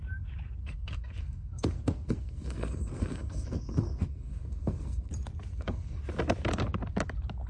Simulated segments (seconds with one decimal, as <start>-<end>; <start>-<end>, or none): 0.6-5.1; 5.5-6.0